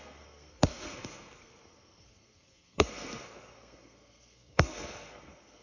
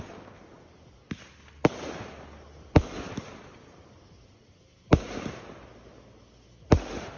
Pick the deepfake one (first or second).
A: first